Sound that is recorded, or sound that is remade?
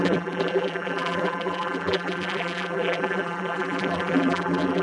remade